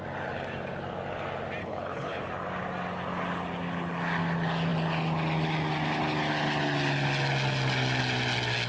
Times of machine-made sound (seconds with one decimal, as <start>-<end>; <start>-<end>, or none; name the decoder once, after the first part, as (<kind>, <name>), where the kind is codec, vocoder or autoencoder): 1.6-2.2 (codec, HILCodec)